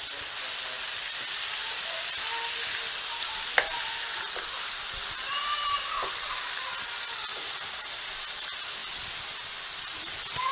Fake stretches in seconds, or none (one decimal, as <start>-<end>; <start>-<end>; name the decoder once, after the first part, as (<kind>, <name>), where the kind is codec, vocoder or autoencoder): 7.3-8.1 (vocoder, Vocos)